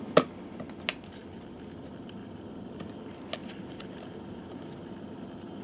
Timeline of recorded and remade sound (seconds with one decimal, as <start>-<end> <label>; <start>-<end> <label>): 0.0-2.2 recorded; 2.2-2.7 remade; 2.7-3.4 recorded; 3.4-4.6 remade; 4.6-5.6 recorded

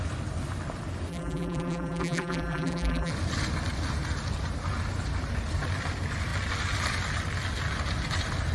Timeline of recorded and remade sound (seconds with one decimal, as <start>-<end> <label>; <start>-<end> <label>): 0.0-1.1 recorded; 1.1-3.1 remade; 3.1-8.5 recorded

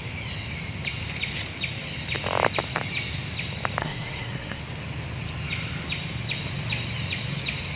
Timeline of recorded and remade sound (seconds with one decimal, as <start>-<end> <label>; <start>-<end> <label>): 0.0-3.8 recorded; 3.8-4.6 remade; 4.6-7.8 recorded

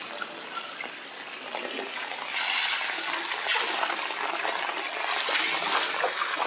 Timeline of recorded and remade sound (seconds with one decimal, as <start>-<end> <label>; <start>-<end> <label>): 0.0-6.5 recorded

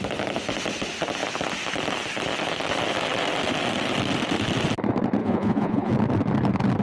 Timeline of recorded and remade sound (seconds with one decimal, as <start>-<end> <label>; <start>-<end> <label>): 0.0-5.2 recorded; 5.2-5.9 remade; 5.9-6.8 recorded